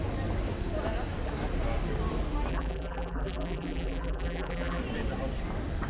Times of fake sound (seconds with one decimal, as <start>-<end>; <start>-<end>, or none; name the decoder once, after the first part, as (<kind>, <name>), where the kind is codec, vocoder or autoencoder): 2.5-4.8 (vocoder, BigVGAN v2)